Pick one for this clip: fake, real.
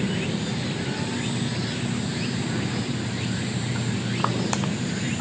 real